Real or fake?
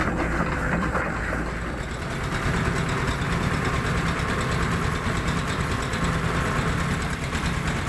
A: fake